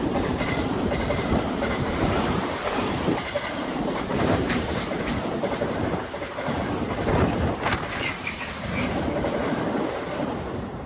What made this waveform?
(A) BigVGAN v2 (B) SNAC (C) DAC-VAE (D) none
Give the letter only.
A